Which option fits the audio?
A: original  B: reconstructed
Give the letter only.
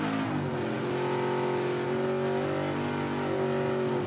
A